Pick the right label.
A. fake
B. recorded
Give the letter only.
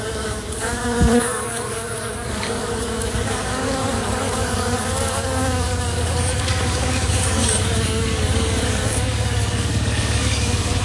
A